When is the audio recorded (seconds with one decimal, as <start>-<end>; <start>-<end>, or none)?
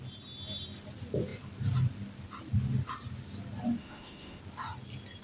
0.0-3.8; 4.4-5.2